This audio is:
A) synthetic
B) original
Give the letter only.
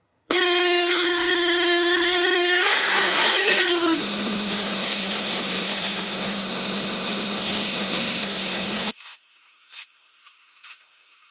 A